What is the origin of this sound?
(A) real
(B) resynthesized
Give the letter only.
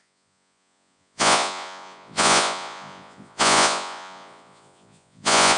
B